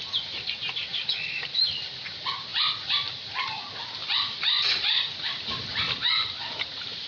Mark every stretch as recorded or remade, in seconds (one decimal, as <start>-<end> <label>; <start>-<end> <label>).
0.0-0.9 recorded; 0.9-1.5 remade; 1.5-2.5 recorded; 2.5-3.3 remade; 3.3-4.0 recorded; 4.0-7.1 remade